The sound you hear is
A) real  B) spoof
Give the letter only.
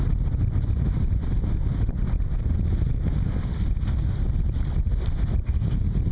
A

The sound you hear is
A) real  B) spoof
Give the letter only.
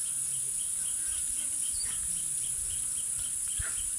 A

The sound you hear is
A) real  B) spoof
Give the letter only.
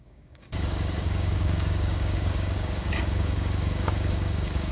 B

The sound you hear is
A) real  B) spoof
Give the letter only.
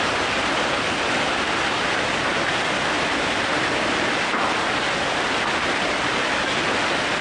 A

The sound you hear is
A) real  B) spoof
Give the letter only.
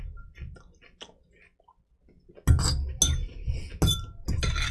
A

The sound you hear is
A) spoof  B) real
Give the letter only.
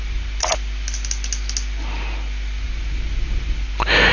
B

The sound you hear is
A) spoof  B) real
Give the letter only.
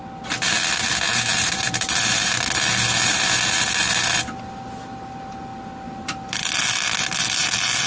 B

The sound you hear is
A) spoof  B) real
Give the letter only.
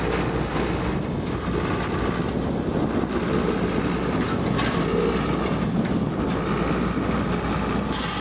B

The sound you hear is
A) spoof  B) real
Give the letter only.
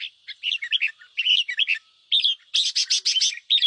B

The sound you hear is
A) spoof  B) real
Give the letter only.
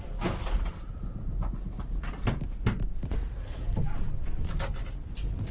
B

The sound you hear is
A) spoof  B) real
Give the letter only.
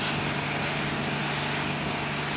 B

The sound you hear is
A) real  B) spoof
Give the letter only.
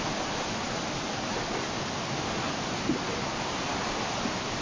A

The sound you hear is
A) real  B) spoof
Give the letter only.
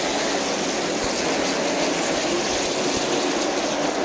A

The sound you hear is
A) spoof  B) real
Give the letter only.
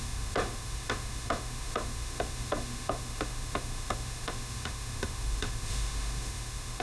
A